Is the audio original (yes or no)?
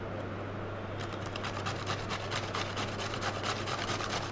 yes